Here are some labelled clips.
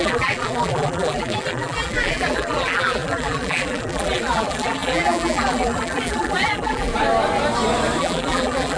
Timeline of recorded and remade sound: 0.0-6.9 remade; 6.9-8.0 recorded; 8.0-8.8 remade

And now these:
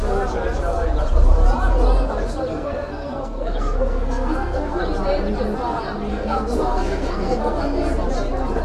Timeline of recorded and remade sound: 0.0-2.5 recorded; 2.5-4.8 remade; 4.8-6.1 recorded; 6.1-7.6 remade; 7.6-8.6 recorded

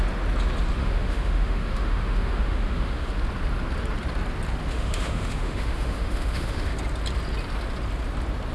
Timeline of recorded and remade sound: 0.0-0.8 recorded; 0.8-3.1 remade; 3.1-4.7 recorded; 4.7-6.7 remade; 6.7-8.5 recorded

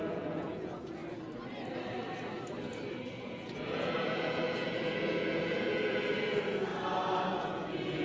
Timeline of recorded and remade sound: 0.0-1.0 remade; 1.0-3.1 recorded; 3.1-6.7 remade; 6.7-7.3 recorded; 7.3-8.0 remade